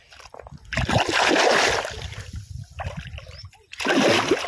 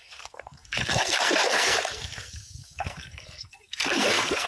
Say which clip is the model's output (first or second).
second